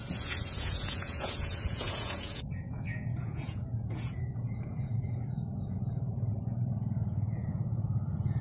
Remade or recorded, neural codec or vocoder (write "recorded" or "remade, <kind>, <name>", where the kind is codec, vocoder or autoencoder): remade, vocoder, Vocos